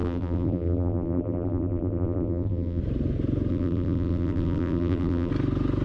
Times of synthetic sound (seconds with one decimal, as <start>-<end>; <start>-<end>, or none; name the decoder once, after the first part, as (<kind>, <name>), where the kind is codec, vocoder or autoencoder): 0.0-2.8 (vocoder, BigVGAN v2); 3.5-5.3